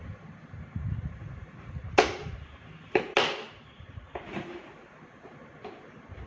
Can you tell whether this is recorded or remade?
remade